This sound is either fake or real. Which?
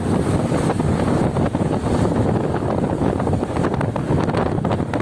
real